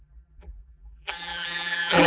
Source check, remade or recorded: remade